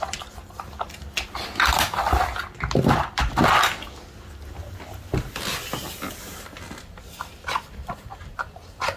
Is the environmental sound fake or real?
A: real